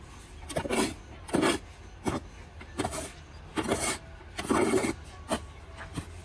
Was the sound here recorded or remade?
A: recorded